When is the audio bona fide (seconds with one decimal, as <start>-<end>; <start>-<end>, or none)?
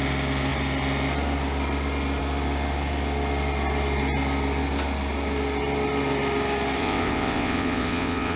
0.0-6.8